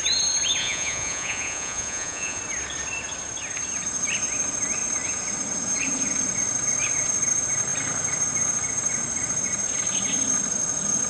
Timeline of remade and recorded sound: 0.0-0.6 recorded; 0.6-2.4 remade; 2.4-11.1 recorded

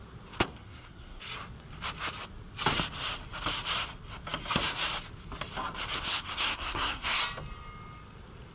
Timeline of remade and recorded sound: 0.0-0.5 recorded; 0.5-1.2 remade; 1.2-6.1 recorded; 6.1-7.2 remade; 7.2-8.5 recorded